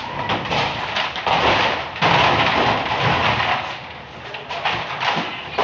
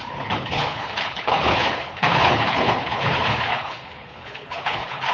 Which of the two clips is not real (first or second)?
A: second